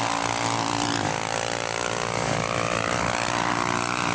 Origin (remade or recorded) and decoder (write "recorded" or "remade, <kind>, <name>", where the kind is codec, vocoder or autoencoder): recorded